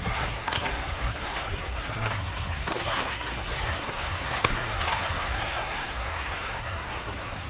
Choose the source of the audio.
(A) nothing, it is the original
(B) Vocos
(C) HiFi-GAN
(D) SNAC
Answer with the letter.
D